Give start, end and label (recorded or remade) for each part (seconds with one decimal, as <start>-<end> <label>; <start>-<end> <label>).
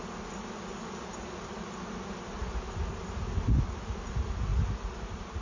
0.0-5.4 recorded